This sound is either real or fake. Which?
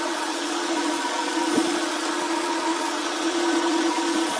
fake